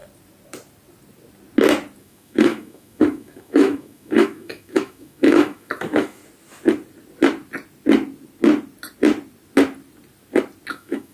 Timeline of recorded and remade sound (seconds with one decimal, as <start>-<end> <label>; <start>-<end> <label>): 0.0-2.0 recorded; 2.0-6.2 remade; 6.2-10.7 recorded; 10.7-11.1 remade